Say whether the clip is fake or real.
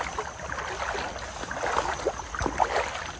real